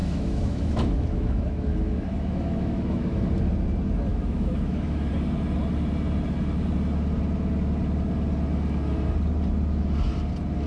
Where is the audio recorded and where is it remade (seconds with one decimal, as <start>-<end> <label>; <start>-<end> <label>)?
0.0-3.3 remade; 3.3-4.1 recorded; 4.1-5.1 remade; 5.1-10.7 recorded